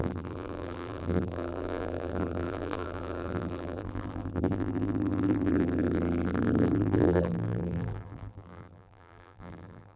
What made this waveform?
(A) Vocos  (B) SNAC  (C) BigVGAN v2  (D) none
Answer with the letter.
C